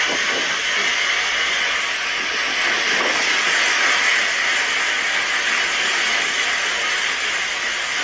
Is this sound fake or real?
real